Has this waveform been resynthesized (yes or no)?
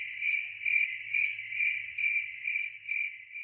no